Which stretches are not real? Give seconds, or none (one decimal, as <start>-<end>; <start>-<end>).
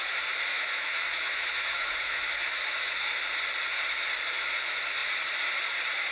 0.5-3.2